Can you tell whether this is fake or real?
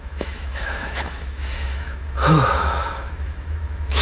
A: fake